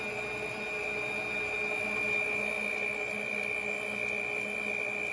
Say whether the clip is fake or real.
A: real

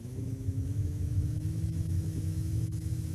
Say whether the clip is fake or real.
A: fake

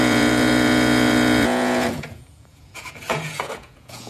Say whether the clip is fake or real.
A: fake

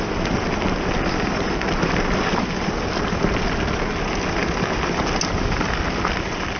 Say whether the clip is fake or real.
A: real